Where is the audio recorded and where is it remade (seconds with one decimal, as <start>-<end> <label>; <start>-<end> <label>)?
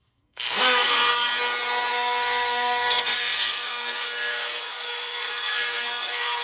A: 0.0-1.3 remade; 1.3-1.9 recorded; 1.9-6.4 remade